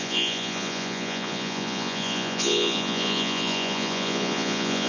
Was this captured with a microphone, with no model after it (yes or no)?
no